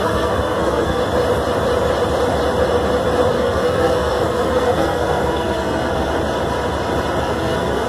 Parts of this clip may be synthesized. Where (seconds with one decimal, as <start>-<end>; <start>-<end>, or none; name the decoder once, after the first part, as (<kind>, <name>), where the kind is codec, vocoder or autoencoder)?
0.0-1.0 (codec, SNAC); 3.3-6.1; 7.2-7.9